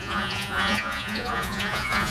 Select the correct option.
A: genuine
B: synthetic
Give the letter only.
B